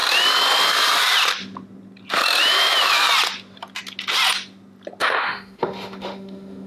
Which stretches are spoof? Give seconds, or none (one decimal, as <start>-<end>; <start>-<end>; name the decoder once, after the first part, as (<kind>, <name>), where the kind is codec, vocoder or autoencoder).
5.0-6.7 (autoencoder, DAC-VAE)